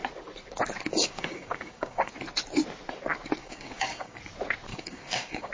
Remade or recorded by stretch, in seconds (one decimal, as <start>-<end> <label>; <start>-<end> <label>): 0.0-0.9 recorded; 0.9-2.1 remade; 2.1-3.4 recorded; 3.4-4.2 remade; 4.2-4.7 recorded; 4.7-5.5 remade